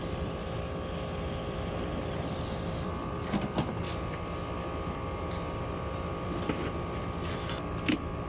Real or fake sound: real